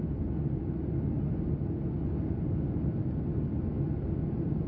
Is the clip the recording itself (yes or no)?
yes